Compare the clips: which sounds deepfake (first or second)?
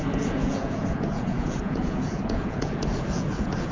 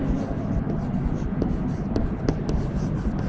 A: first